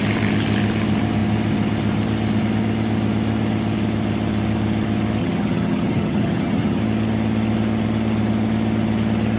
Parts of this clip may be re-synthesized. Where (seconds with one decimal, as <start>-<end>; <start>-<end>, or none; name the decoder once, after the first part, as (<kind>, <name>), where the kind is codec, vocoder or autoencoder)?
5.2-6.8 (vocoder, HiFi-GAN)